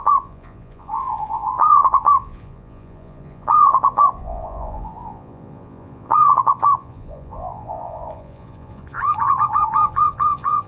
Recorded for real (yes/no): no